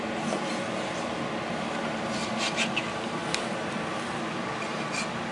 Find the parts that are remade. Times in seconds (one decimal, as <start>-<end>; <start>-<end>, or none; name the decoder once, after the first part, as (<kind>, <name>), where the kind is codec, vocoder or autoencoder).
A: none